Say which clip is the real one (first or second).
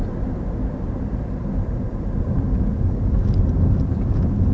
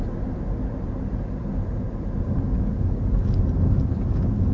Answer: second